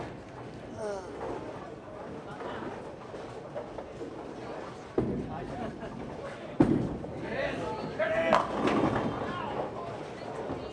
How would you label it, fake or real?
real